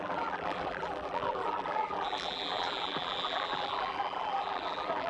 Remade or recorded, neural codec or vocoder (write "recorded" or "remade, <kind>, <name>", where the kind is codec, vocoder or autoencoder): remade, vocoder, BigVGAN v2